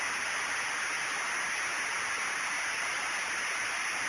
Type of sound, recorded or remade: recorded